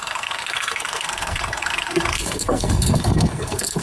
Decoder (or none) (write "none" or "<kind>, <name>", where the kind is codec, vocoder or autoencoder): codec, SNAC